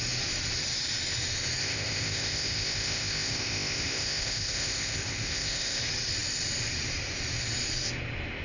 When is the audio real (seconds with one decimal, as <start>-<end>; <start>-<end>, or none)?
0.0-1.6; 5.8-8.4